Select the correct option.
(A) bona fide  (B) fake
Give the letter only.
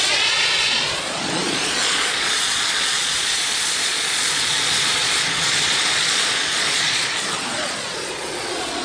B